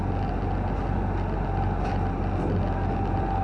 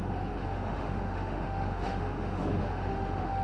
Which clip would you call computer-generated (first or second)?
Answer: second